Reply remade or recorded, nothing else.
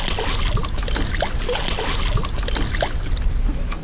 recorded